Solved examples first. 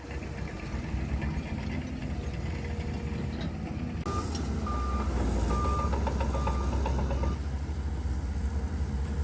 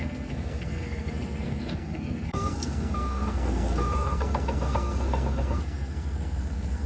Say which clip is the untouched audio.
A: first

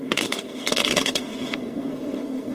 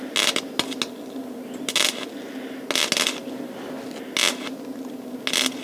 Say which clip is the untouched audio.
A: second